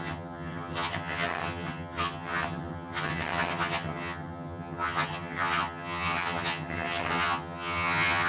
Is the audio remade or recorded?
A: remade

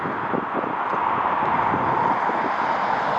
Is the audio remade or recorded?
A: recorded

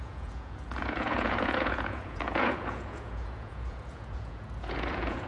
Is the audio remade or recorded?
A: remade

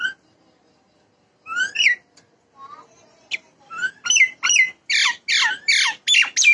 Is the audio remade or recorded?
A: recorded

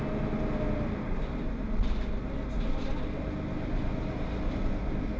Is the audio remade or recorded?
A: recorded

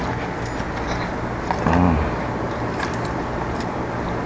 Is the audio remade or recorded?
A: recorded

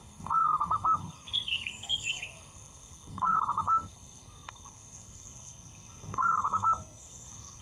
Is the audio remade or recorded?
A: remade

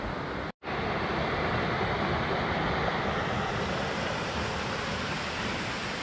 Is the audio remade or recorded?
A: recorded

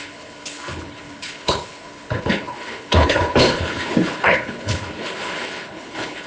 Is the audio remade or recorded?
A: remade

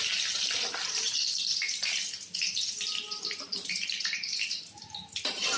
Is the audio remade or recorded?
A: recorded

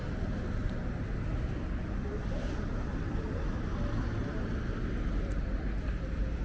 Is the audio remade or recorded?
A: recorded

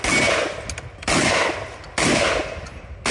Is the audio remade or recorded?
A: recorded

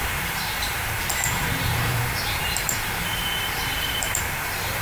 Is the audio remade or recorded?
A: remade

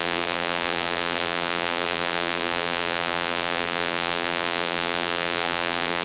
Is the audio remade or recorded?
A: remade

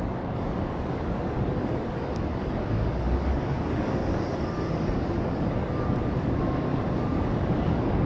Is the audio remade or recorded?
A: remade